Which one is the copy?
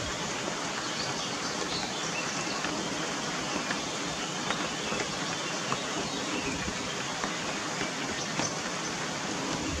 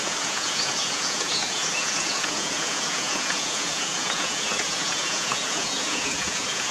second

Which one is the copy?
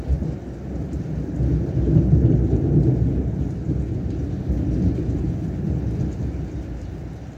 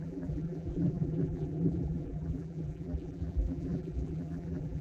second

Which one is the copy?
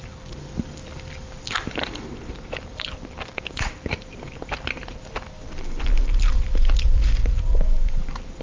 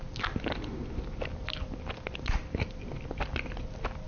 first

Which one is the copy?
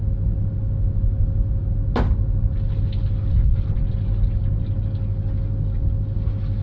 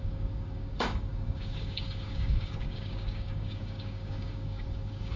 second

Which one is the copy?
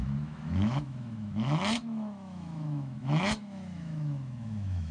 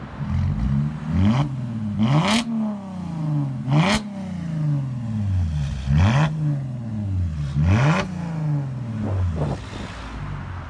first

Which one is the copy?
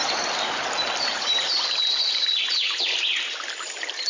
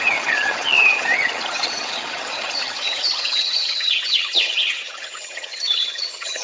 second